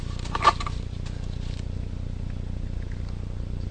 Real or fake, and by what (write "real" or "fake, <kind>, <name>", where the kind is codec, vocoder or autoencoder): real